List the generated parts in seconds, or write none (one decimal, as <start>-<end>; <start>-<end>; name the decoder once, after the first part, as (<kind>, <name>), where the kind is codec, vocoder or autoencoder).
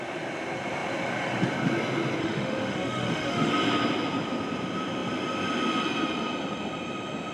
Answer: 2.2-3.5 (autoencoder, DAC-VAE)